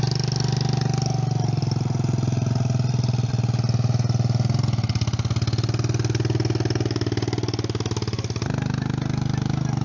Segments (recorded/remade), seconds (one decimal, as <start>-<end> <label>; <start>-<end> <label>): 0.0-9.8 recorded